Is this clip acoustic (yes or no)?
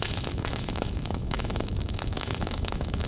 no